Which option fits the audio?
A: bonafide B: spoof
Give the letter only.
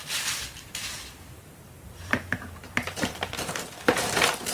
B